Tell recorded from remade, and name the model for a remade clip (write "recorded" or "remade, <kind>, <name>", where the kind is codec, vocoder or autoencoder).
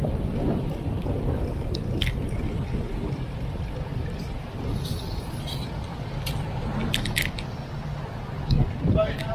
recorded